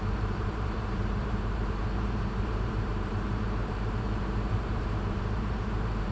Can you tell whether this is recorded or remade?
remade